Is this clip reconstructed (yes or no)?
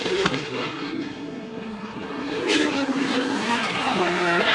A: yes